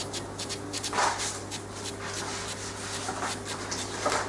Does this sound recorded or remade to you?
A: recorded